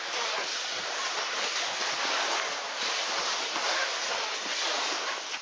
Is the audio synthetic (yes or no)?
no